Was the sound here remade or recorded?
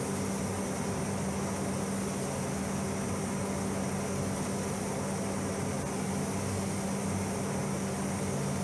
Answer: recorded